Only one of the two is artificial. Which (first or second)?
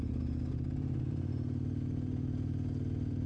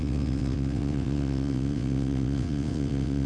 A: second